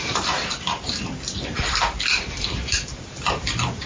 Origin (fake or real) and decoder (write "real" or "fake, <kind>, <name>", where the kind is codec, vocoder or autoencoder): real